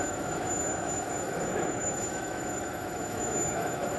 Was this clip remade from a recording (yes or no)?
yes